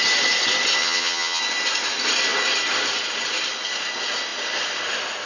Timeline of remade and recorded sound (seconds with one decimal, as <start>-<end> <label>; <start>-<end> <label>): 0.0-0.8 recorded; 0.8-1.4 remade; 1.4-5.3 recorded